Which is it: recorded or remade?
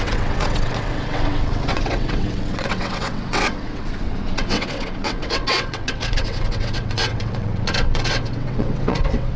remade